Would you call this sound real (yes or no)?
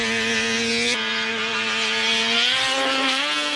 yes